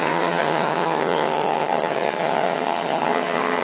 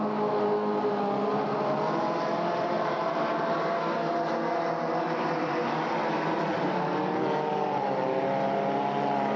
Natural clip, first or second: second